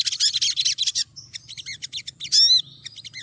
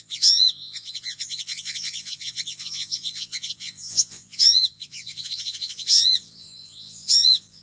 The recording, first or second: first